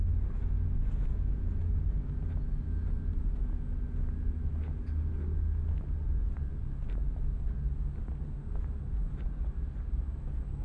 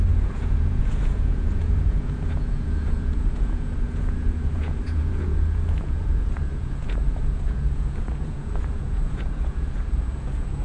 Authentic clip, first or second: first